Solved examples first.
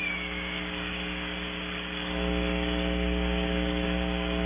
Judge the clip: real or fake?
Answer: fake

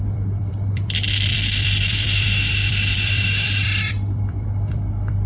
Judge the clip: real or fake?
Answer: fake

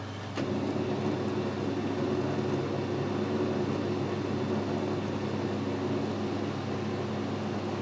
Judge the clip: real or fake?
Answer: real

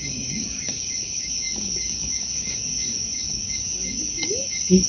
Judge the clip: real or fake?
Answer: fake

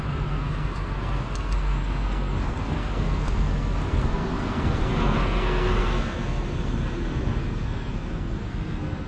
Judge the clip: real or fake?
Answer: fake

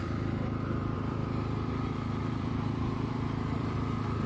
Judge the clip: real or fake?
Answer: fake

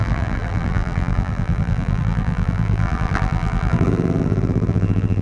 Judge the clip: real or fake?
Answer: fake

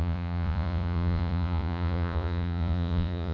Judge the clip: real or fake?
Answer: fake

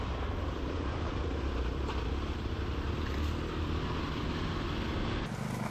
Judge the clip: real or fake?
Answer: real